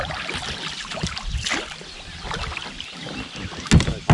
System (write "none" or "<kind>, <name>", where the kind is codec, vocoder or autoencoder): none